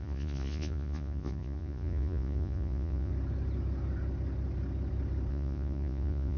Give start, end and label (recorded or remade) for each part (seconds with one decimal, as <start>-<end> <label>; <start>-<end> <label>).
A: 0.0-3.1 remade; 3.1-5.3 recorded; 5.3-6.4 remade